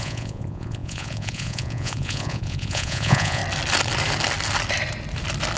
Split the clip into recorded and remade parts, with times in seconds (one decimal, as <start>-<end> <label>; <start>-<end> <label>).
0.0-3.4 remade; 3.4-5.6 recorded